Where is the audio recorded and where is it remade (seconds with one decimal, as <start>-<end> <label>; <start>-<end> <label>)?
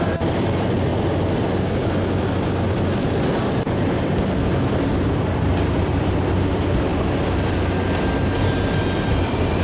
0.0-0.9 remade; 0.9-3.6 recorded; 3.6-6.9 remade; 6.9-9.1 recorded; 9.1-9.6 remade